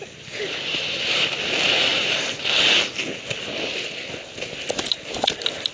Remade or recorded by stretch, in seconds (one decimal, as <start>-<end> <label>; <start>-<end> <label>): 0.0-0.7 recorded; 0.7-1.4 remade; 1.4-1.9 recorded; 1.9-2.7 remade; 2.7-5.7 recorded

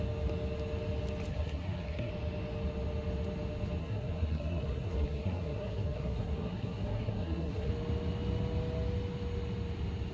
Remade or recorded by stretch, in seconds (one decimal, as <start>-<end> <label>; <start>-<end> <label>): 0.0-1.3 recorded; 1.3-2.1 remade; 2.1-3.8 recorded; 3.8-7.7 remade; 7.7-10.1 recorded

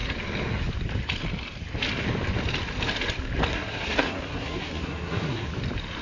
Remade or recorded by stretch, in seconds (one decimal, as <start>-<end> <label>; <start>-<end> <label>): 0.0-3.5 recorded; 3.5-5.5 remade; 5.5-6.0 recorded

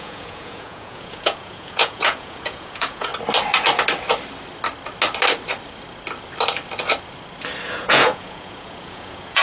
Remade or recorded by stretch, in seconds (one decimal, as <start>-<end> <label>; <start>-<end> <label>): 0.0-3.1 remade; 3.1-7.7 recorded; 7.7-9.4 remade

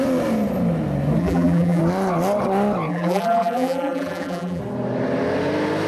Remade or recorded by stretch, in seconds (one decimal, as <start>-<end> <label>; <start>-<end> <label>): 0.0-1.2 recorded; 1.2-1.8 remade; 1.8-2.9 recorded; 2.9-4.6 remade; 4.6-5.9 recorded

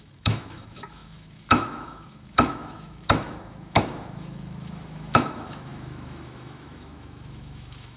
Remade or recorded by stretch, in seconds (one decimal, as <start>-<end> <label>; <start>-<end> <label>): 0.0-8.0 remade

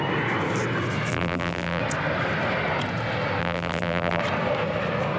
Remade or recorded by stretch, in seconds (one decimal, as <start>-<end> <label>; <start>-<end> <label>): 0.0-1.1 recorded; 1.1-1.8 remade; 1.8-3.4 recorded; 3.4-4.2 remade; 4.2-5.2 recorded